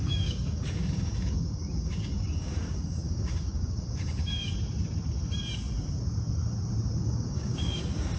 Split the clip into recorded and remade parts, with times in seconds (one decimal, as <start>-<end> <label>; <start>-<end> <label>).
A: 0.0-4.5 remade; 4.5-7.0 recorded; 7.0-8.2 remade